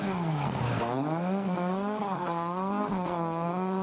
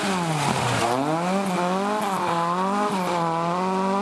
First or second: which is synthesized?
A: first